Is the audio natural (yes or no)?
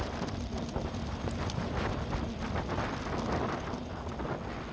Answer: yes